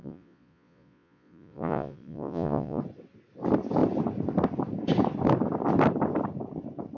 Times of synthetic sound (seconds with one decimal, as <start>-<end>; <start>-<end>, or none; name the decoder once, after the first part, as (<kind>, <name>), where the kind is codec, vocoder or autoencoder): 0.0-2.8 (vocoder, Vocos)